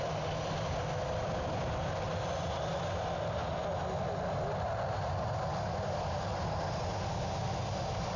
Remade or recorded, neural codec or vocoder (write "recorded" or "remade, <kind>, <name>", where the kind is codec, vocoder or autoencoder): recorded